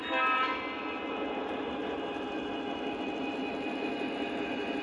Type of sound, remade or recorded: recorded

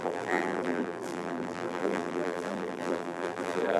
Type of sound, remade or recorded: remade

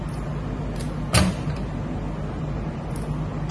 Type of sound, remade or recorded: recorded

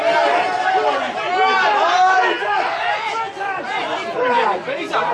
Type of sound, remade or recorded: recorded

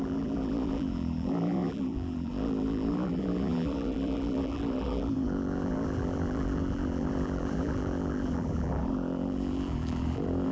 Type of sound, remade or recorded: remade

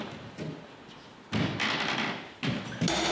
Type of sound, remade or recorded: recorded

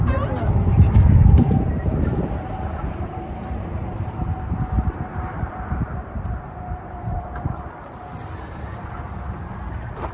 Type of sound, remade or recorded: remade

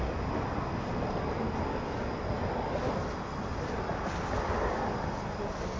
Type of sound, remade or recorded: recorded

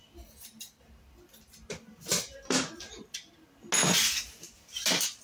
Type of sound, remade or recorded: recorded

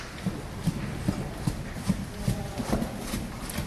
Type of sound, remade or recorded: recorded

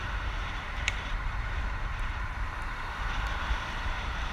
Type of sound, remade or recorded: remade